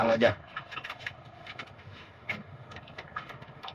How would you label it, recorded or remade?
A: remade